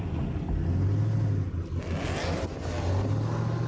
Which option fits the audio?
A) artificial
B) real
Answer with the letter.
B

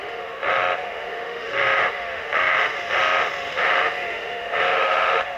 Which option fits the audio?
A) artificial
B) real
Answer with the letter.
A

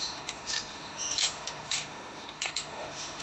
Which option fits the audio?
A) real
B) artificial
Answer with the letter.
B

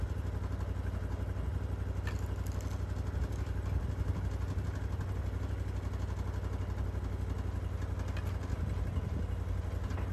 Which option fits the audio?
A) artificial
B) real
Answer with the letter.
B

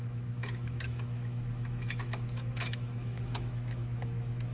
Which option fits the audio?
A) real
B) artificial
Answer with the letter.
B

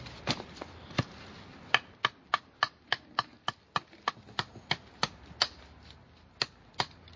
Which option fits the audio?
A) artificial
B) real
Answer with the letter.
B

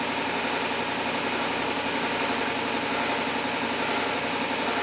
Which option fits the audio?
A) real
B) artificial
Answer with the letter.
A